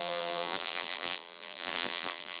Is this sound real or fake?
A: fake